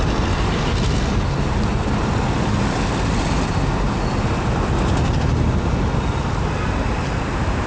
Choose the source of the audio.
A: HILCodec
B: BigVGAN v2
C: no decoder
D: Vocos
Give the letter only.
C